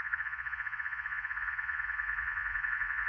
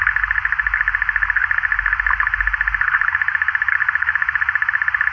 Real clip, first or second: second